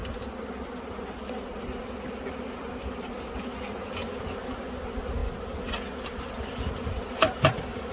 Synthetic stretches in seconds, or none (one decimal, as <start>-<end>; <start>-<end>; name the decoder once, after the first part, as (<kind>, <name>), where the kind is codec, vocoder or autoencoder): none